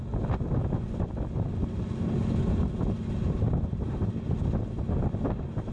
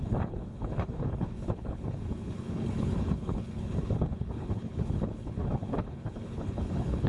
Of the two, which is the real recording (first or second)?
first